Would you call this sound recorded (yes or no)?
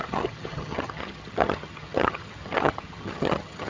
no